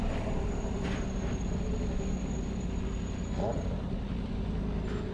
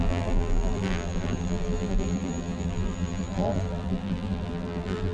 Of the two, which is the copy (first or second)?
second